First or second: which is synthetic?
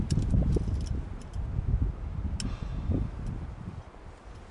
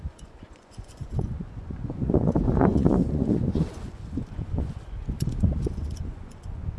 second